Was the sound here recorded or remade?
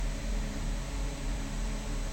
remade